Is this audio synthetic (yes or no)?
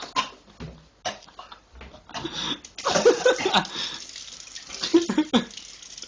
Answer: no